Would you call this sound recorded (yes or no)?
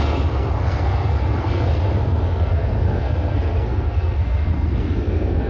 no